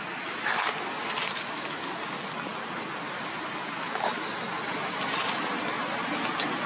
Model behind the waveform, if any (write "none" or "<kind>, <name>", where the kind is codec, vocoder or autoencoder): none